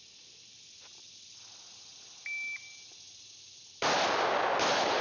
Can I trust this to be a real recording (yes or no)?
yes